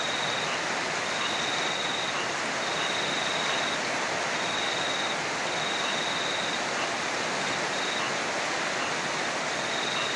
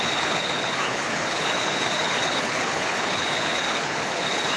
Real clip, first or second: first